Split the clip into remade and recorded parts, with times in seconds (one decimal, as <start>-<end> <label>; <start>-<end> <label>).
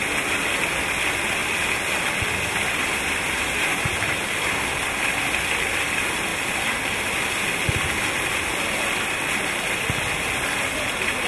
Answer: 0.0-11.3 recorded